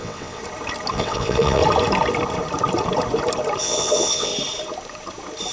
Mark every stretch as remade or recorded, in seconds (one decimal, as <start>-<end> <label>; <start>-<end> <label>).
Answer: 0.0-0.4 remade; 0.4-0.9 recorded; 0.9-1.6 remade; 1.6-3.6 recorded; 3.6-4.3 remade; 4.3-5.5 recorded

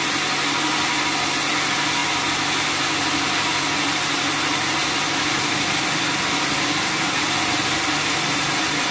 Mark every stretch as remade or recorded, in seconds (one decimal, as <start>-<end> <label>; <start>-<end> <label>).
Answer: 0.0-8.9 recorded

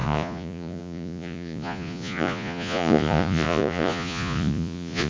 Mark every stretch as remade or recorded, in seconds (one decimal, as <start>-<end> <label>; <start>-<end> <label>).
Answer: 0.0-5.1 remade

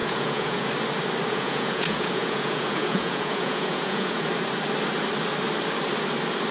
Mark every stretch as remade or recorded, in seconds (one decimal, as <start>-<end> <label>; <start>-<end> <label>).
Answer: 0.0-0.7 remade; 0.7-1.3 recorded; 1.3-4.3 remade; 4.3-6.5 recorded